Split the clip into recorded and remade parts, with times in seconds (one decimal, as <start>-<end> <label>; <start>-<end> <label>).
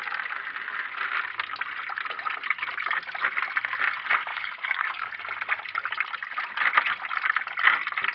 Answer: 0.0-4.3 recorded; 4.3-5.1 remade; 5.1-8.1 recorded